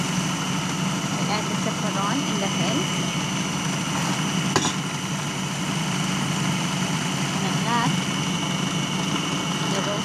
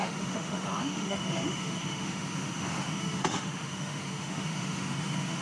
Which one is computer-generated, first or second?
second